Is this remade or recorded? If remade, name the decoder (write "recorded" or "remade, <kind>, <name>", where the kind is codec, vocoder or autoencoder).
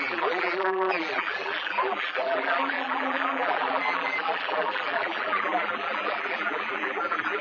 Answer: remade, vocoder, BigVGAN v2